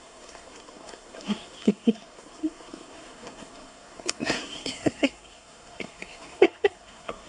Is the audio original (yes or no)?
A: no